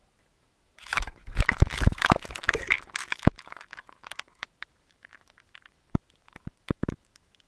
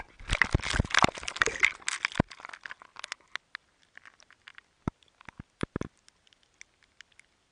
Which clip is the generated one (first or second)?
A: first